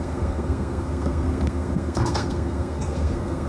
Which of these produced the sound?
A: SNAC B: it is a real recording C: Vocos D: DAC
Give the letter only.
A